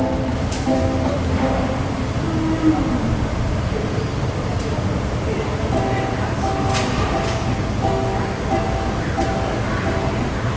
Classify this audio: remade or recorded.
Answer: recorded